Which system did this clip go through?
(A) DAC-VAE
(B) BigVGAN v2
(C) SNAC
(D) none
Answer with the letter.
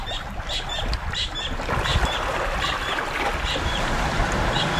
D